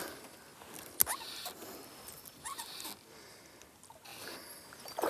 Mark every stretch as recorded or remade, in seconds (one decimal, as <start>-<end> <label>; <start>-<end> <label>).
0.0-5.1 recorded